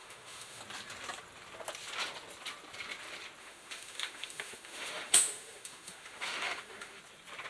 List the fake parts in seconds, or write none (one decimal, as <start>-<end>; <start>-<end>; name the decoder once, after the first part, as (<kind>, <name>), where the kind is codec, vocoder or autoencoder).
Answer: 0.0-0.6 (autoencoder, DAC-VAE); 3.4-7.0